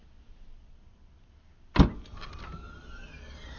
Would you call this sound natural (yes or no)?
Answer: yes